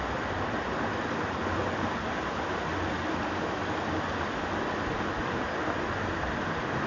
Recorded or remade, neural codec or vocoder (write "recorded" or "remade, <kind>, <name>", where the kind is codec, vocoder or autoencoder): recorded